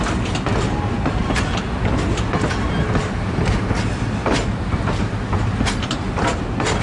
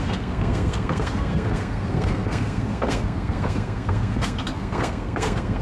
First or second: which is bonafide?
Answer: first